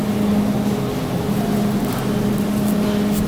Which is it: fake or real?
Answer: real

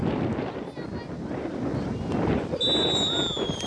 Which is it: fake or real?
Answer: real